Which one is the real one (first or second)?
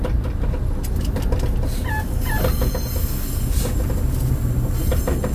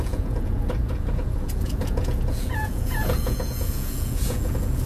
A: first